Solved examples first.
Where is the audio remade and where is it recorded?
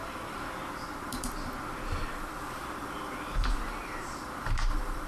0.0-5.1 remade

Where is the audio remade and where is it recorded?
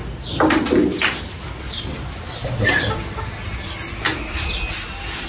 0.0-5.3 recorded